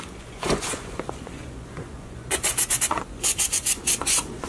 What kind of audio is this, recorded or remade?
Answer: remade